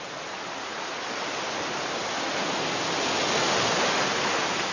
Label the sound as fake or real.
real